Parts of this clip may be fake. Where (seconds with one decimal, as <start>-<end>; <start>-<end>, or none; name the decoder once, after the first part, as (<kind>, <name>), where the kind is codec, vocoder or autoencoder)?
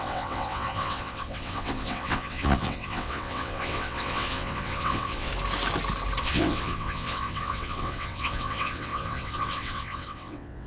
0.0-5.3 (vocoder, WaveNeXt); 6.2-10.7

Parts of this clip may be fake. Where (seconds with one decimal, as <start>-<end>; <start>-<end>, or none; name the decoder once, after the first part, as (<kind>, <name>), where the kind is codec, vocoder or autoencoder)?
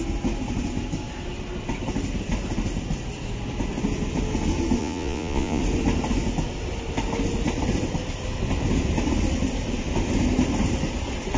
4.8-5.6 (vocoder, Vocos)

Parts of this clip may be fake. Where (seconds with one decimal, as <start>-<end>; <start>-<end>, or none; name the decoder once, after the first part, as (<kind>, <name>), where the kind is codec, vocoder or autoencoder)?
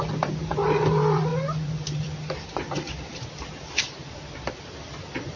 0.0-5.4 (vocoder, BigVGAN v2)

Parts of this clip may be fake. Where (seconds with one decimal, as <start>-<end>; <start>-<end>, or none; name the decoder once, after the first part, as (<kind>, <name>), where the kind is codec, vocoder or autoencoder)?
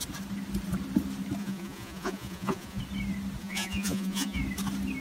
1.4-2.8 (vocoder, Vocos); 3.4-4.4